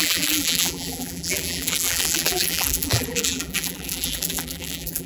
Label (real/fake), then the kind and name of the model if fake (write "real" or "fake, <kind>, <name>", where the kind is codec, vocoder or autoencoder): fake, vocoder, BigVGAN v2